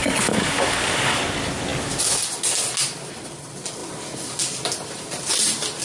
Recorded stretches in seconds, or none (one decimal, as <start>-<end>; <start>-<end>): 1.2-5.8